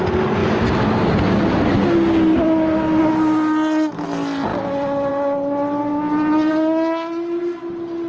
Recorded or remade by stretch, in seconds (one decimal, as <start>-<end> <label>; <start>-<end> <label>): 0.0-8.1 recorded